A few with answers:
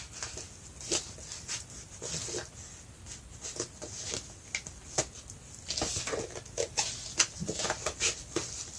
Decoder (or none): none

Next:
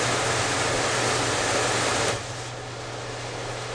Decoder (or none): none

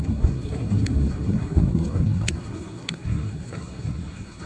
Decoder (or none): codec, SNAC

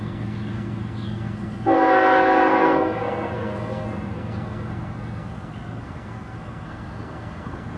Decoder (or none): codec, SNAC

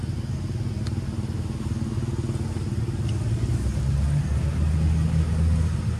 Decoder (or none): none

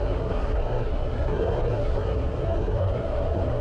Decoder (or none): codec, SNAC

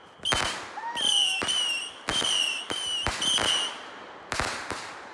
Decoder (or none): none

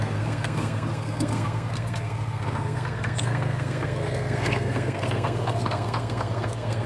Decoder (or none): codec, SNAC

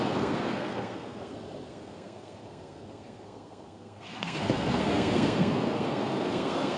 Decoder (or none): codec, SNAC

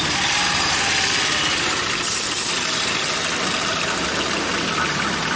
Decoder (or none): none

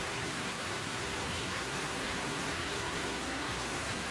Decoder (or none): codec, SNAC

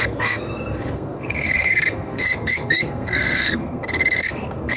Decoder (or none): codec, SNAC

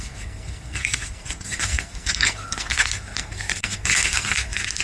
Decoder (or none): codec, SNAC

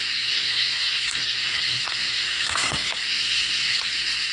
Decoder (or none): codec, SNAC